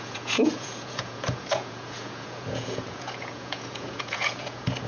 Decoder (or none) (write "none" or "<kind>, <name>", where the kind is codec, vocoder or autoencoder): vocoder, Vocos